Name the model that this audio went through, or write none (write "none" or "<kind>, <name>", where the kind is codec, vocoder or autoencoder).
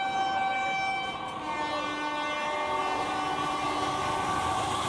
none